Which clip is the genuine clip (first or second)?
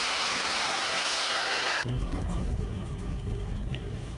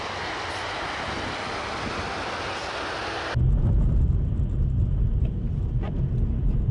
second